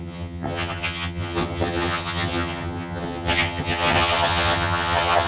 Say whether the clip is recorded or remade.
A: remade